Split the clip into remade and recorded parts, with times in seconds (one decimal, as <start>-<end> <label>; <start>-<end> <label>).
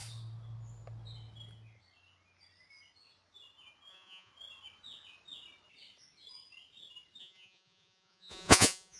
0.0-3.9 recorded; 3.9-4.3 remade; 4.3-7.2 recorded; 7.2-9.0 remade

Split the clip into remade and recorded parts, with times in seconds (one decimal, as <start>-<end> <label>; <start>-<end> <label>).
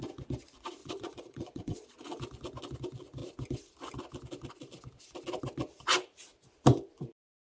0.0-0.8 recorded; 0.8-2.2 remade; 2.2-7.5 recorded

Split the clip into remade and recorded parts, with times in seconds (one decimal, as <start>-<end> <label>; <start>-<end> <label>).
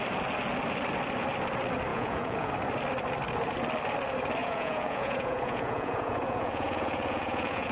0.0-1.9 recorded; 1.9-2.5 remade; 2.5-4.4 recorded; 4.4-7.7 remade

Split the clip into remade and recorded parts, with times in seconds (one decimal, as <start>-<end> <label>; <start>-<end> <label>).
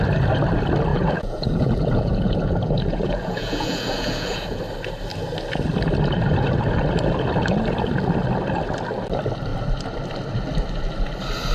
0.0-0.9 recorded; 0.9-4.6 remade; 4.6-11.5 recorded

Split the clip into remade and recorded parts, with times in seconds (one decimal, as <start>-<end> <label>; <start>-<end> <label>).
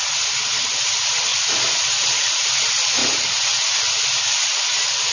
0.0-1.3 recorded; 1.3-1.8 remade; 1.8-3.0 recorded; 3.0-4.0 remade; 4.0-5.1 recorded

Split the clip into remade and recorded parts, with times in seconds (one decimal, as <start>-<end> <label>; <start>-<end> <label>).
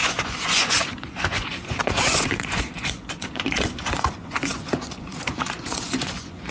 0.0-6.5 remade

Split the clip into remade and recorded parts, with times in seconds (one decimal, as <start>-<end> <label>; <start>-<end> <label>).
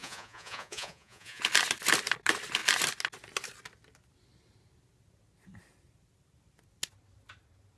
0.0-1.4 remade; 1.4-7.8 recorded